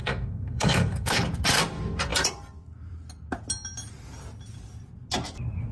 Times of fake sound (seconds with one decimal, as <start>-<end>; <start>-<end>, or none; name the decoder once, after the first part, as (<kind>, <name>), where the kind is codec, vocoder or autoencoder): 0.0-1.2 (codec, SNAC)